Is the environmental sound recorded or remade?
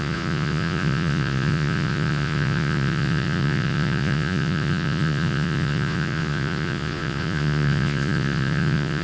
remade